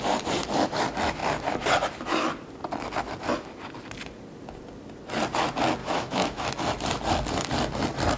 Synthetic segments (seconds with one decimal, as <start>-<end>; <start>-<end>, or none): 5.8-6.5